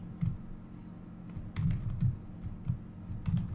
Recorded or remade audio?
recorded